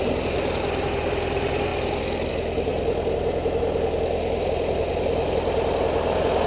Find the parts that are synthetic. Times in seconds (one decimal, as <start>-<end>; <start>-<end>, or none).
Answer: none